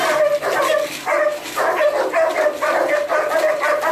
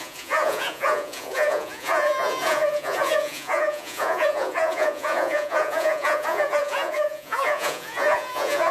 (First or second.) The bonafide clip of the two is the first